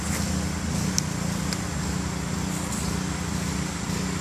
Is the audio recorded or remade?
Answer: recorded